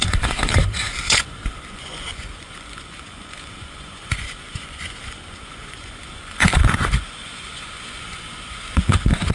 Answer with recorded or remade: remade